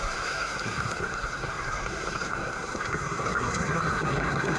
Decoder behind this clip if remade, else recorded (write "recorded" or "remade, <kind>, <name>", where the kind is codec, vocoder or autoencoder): remade, codec, SNAC